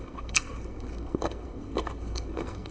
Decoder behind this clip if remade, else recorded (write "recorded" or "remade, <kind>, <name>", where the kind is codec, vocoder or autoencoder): remade, codec, SNAC